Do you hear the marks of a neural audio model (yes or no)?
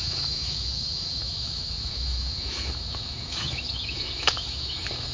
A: yes